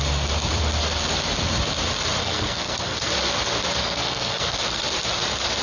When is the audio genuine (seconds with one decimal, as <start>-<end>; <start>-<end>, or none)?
0.0-2.2; 3.1-3.8; 4.8-5.6